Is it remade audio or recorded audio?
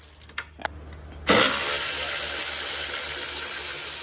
recorded